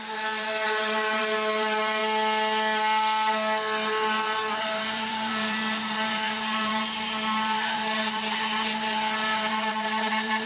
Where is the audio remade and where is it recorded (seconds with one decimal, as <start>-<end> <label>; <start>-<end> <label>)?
0.0-2.0 remade; 2.0-4.7 recorded; 4.7-10.5 remade